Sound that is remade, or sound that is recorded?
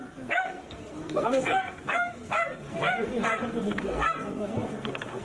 remade